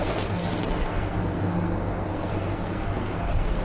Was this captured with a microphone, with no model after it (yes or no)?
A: no